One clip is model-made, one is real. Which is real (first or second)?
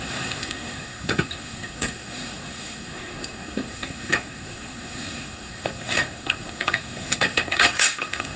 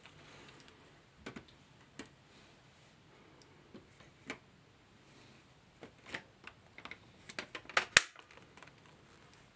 second